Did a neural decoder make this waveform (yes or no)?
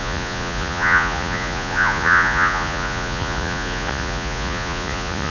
yes